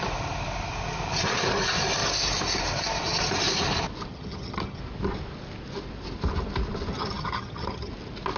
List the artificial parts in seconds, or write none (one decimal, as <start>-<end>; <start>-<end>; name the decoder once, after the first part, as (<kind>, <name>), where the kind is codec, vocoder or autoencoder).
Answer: 4.1-4.8 (vocoder, HiFi-GAN); 6.9-7.9